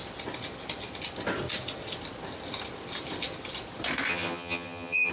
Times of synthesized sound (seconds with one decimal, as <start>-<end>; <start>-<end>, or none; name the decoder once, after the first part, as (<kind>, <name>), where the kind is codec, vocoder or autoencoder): 4.1-5.1 (vocoder, HiFi-GAN)